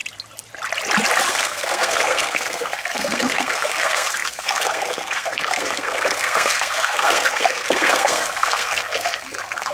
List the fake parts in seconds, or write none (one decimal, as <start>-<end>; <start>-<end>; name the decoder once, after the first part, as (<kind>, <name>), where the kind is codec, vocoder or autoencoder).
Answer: 1.3-9.7 (codec, SNAC)